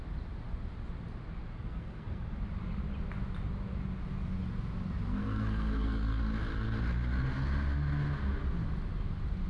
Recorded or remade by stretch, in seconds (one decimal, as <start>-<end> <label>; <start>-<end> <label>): 0.0-1.4 recorded; 1.4-2.4 remade; 2.4-5.1 recorded; 5.1-6.2 remade; 6.2-9.5 recorded